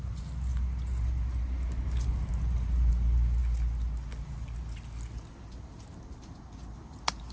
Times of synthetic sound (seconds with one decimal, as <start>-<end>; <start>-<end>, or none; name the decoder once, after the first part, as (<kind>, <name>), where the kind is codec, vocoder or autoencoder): none